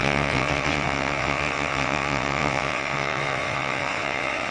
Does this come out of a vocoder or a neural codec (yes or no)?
yes